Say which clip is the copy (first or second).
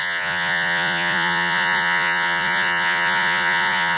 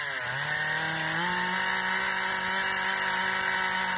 first